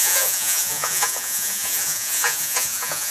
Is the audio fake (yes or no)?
yes